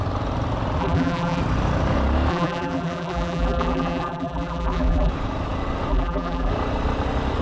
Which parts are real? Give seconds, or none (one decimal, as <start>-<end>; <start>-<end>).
0.0-0.8; 1.4-2.3; 5.1-5.9; 6.5-7.4